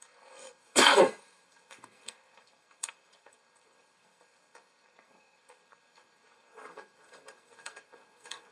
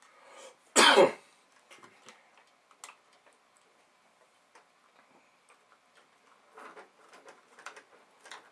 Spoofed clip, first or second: first